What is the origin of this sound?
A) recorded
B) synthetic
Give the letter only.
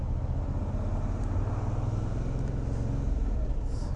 A